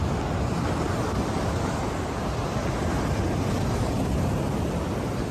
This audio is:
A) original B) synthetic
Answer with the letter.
A